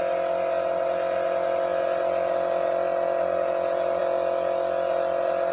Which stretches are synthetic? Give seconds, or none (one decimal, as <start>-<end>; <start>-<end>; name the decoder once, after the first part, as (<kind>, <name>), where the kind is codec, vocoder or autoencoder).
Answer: none